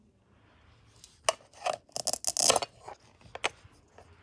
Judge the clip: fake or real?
real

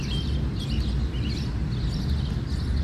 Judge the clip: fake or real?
real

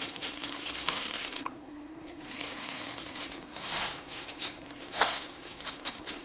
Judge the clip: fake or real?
fake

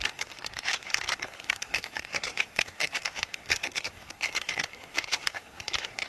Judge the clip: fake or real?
fake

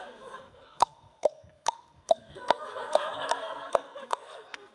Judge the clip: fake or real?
fake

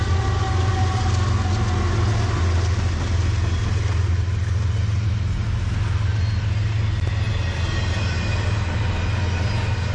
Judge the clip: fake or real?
real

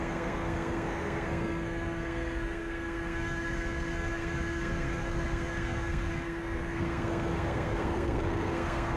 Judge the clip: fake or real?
fake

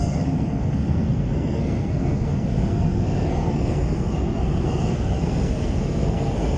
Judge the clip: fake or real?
fake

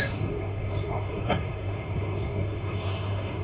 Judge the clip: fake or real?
fake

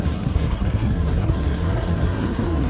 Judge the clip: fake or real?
fake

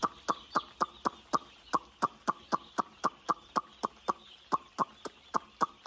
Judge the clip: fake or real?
real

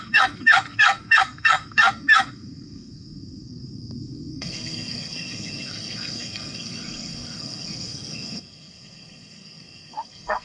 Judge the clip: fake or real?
fake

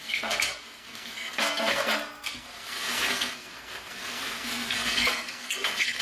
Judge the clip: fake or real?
fake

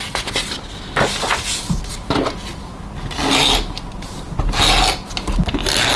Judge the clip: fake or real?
real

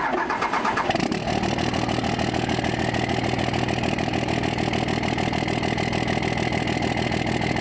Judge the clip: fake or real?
real